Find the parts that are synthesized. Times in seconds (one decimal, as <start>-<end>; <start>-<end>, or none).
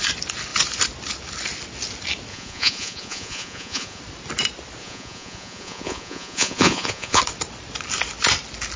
2.3-4.0; 4.8-7.2